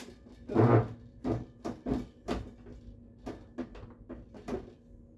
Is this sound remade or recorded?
recorded